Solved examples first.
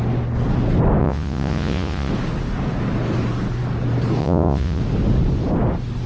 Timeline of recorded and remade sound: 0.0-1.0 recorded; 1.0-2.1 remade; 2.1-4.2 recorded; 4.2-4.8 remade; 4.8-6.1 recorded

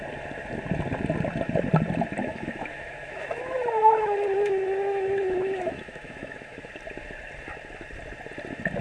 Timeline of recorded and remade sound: 0.0-2.2 recorded; 2.2-6.7 remade; 6.7-8.8 recorded

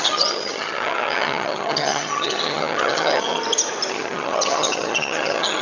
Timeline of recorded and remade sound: 0.0-3.4 remade; 3.4-3.9 recorded; 3.9-5.6 remade

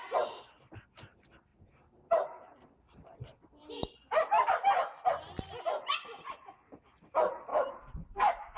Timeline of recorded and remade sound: 0.0-1.5 recorded; 1.5-3.7 remade; 3.7-7.5 recorded; 7.5-8.6 remade

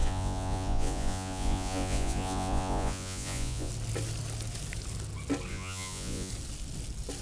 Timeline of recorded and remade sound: 0.0-3.7 remade; 3.7-5.5 recorded; 5.5-6.3 remade; 6.3-7.2 recorded

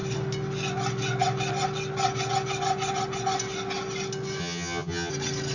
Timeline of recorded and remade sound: 0.0-4.4 recorded; 4.4-5.1 remade; 5.1-5.5 recorded